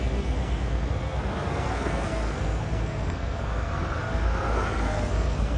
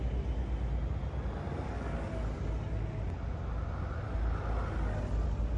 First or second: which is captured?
second